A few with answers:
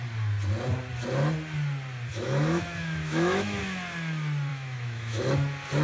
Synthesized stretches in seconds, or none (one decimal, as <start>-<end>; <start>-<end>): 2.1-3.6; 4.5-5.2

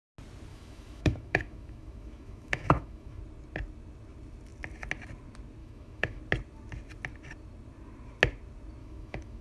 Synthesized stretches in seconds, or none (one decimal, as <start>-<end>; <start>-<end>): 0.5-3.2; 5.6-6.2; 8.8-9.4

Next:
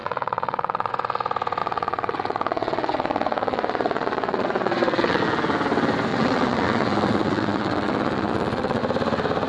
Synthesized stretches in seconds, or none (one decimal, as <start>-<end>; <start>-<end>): 0.0-0.9; 1.6-5.2; 6.1-8.8

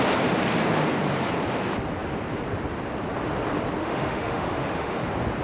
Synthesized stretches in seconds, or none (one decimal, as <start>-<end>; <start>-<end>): 3.8-5.0